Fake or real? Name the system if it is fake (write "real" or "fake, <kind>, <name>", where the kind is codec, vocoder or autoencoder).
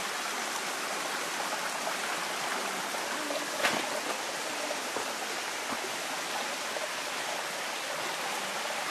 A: real